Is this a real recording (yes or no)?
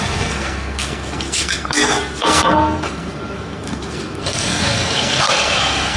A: no